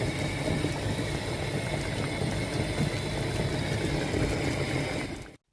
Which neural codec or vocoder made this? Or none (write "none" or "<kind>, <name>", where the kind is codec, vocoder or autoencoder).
none